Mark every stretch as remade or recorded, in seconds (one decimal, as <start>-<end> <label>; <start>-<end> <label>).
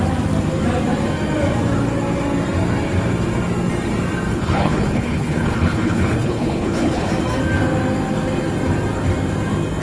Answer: 0.0-4.3 recorded; 4.3-7.1 remade; 7.1-9.8 recorded